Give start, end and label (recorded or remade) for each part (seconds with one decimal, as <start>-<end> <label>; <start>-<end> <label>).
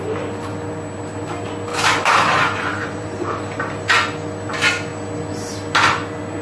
0.0-1.7 recorded; 1.7-3.7 remade; 3.7-6.4 recorded